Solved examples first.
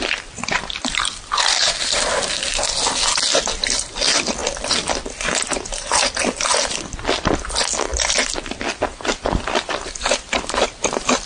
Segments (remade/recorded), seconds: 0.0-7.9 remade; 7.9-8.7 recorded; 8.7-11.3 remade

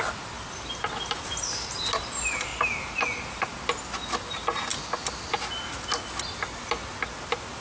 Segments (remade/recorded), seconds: 0.0-1.2 recorded; 1.2-1.9 remade; 1.9-7.6 recorded

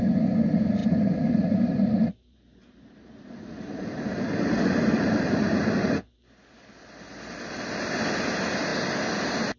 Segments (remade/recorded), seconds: 0.0-0.8 recorded; 0.8-5.7 remade; 5.7-9.6 recorded